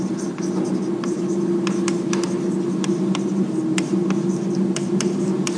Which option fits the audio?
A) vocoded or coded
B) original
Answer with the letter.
B